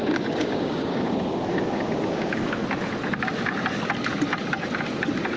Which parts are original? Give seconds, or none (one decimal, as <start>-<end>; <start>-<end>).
2.6-5.4